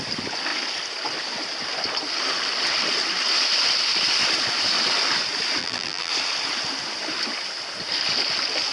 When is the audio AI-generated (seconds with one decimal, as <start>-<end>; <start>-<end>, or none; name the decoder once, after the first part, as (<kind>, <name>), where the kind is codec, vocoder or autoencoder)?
5.6-6.1 (vocoder, BigVGAN v2)